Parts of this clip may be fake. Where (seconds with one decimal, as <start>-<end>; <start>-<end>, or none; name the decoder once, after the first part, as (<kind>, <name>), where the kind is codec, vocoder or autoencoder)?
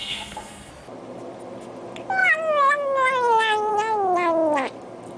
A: 0.0-0.7 (codec, SNAC)